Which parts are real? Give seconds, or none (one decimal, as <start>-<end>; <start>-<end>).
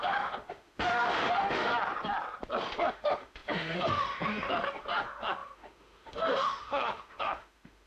1.7-2.9